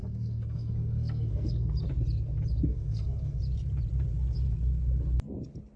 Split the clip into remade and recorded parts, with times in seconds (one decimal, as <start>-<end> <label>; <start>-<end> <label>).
0.0-1.7 remade; 1.7-2.7 recorded; 2.7-3.4 remade; 3.4-5.8 recorded